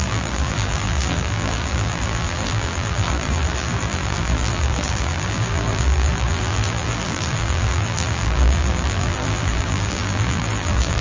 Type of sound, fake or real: fake